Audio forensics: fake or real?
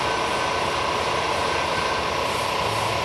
real